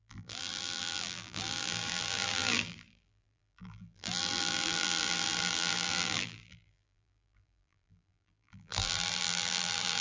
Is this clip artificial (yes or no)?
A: yes